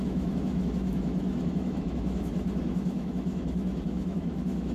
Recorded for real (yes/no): no